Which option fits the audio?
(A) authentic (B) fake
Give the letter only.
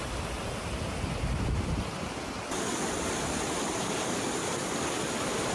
A